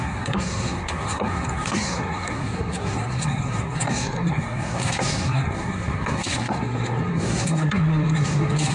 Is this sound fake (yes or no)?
yes